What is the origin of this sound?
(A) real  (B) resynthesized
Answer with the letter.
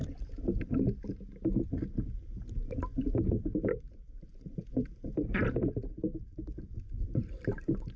B